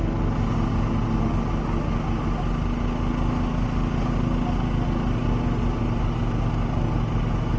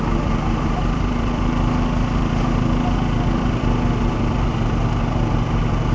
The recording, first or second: first